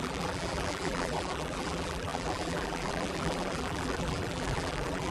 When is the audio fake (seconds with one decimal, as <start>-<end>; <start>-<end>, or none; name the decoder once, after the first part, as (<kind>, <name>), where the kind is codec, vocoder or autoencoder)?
0.0-5.1 (vocoder, BigVGAN v2)